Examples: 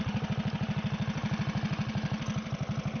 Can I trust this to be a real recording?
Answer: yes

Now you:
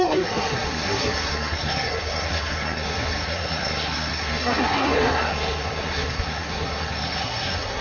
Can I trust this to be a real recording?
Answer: no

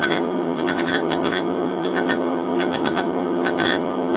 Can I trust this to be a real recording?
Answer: no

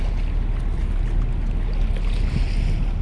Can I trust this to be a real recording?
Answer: yes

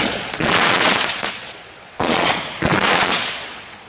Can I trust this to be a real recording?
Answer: no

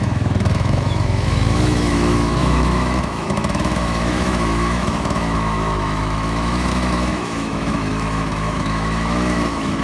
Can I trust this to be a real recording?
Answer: no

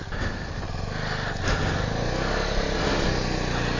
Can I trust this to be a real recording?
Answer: yes